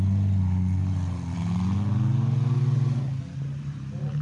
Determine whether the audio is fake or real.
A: real